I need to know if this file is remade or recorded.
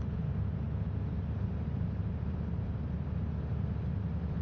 recorded